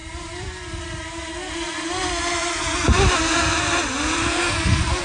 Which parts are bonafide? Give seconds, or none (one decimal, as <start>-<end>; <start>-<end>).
none